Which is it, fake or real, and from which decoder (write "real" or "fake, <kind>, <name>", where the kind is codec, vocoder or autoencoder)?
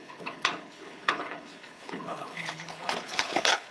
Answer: fake, codec, HILCodec